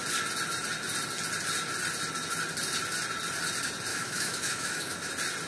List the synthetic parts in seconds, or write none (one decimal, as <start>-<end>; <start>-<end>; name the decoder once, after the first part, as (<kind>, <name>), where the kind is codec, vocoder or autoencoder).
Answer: 3.9-5.1 (autoencoder, DAC-VAE)